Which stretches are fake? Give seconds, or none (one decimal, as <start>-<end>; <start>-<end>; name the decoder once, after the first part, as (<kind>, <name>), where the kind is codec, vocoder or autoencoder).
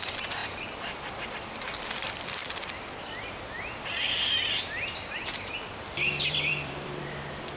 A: 0.4-1.3 (vocoder, BigVGAN v2); 2.4-7.0